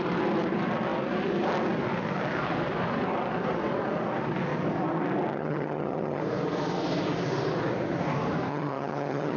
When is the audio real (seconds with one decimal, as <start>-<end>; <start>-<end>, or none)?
0.0-5.3; 6.2-8.5